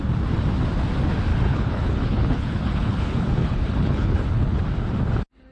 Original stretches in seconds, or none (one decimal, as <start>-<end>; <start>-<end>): 0.0-1.3; 4.6-5.5